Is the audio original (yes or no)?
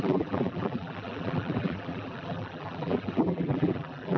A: no